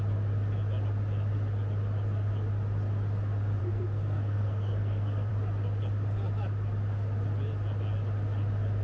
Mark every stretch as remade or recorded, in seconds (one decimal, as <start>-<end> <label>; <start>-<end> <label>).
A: 0.0-3.6 recorded; 3.6-5.3 remade; 5.3-8.8 recorded